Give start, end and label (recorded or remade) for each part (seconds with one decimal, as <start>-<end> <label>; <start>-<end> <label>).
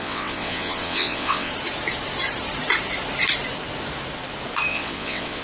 0.0-1.5 remade; 1.5-4.7 recorded; 4.7-5.4 remade